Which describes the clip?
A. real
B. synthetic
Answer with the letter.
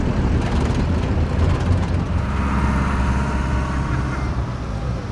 A